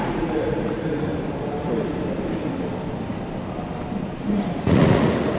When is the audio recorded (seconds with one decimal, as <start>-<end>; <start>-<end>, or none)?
1.1-4.3